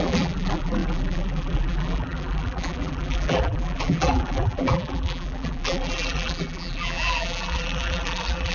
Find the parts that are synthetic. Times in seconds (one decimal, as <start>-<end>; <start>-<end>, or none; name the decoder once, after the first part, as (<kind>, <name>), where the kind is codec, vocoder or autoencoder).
0.0-8.5 (vocoder, BigVGAN v2)